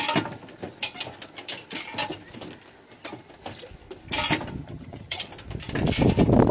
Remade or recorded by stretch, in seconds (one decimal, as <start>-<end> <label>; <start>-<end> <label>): 0.0-4.6 recorded; 4.6-5.3 remade; 5.3-6.5 recorded